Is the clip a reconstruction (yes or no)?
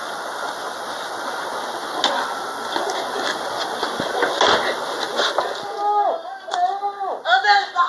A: no